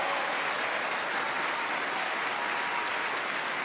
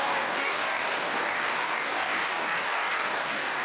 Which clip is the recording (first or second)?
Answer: first